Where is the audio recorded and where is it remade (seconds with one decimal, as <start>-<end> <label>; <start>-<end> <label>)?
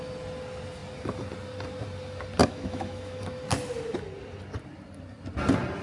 0.0-2.4 recorded; 2.4-3.2 remade; 3.2-5.8 recorded